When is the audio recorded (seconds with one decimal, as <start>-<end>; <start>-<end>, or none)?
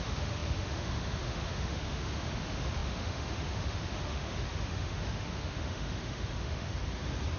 6.7-7.4